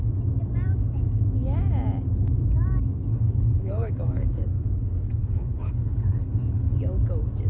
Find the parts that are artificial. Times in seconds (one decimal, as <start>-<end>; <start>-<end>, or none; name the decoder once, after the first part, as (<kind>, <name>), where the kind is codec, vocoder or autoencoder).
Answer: 3.1-4.4 (codec, HILCodec); 5.2-6.8